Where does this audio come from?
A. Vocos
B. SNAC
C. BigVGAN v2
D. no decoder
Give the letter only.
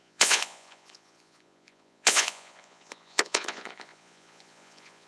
A